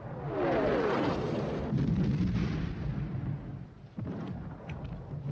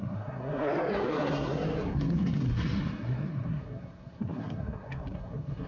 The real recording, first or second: first